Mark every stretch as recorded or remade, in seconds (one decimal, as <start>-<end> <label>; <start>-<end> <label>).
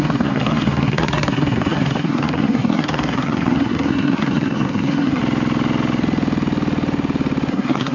0.0-5.2 remade; 5.2-7.5 recorded; 7.5-7.9 remade